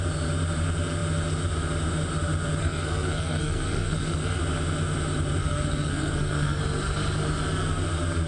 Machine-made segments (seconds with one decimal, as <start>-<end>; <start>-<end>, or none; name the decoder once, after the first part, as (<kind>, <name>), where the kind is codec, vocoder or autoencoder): 2.6-4.4 (codec, SNAC); 5.4-6.6